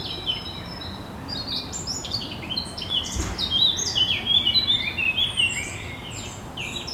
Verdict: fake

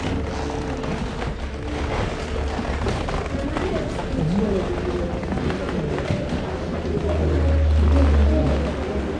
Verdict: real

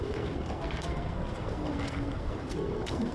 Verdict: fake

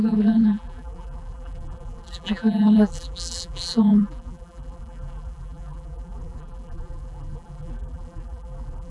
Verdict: fake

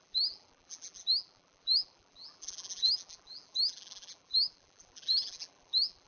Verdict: fake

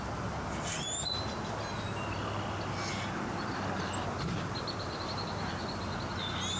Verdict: real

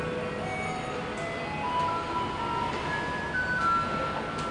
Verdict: real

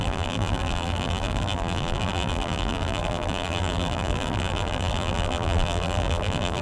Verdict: fake